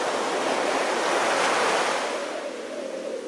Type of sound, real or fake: real